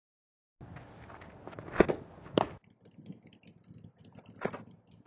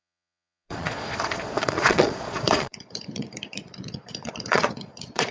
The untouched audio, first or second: first